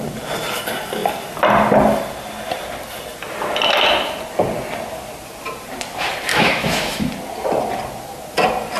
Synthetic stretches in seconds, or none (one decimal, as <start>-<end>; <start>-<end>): 6.3-7.1